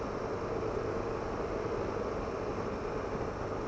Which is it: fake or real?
real